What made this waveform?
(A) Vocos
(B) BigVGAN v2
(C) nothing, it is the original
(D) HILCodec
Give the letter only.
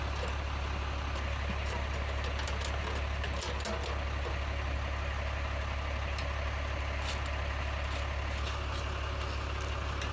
C